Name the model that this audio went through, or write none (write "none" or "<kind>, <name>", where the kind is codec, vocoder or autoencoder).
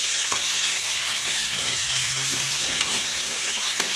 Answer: codec, SNAC